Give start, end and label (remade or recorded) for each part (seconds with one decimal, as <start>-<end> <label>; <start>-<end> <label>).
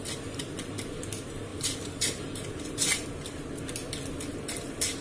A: 0.0-1.5 recorded; 1.5-3.6 remade; 3.6-5.0 recorded